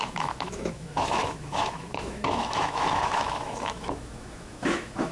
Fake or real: fake